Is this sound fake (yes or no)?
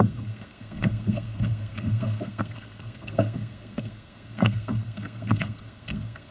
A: yes